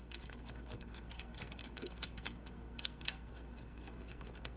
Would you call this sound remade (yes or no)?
yes